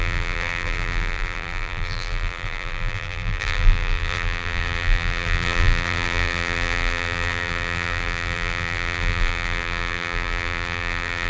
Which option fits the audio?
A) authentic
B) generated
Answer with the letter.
B